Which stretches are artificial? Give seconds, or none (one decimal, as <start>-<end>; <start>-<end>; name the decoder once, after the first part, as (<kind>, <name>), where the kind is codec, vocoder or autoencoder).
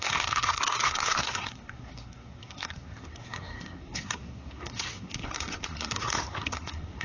0.0-7.0 (codec, SNAC)